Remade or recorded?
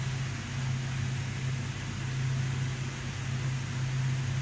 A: recorded